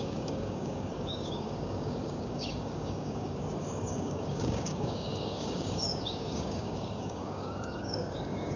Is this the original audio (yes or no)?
no